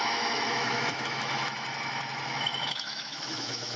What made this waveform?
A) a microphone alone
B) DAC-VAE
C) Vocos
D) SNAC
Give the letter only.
B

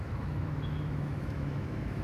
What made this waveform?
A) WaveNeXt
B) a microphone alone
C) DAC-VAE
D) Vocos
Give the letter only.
C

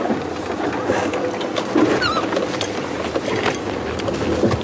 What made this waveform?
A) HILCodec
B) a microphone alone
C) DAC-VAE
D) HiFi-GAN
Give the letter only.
B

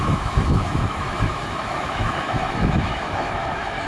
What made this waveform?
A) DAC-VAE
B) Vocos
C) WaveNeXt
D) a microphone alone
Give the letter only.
A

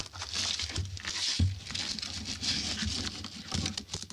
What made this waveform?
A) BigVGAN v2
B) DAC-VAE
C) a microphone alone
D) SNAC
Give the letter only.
C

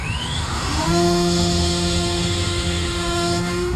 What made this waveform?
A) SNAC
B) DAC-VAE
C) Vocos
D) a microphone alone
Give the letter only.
B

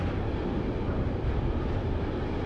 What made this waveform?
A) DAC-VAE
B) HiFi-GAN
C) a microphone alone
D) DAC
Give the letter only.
C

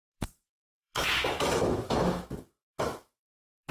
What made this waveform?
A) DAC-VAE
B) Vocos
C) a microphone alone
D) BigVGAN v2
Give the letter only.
A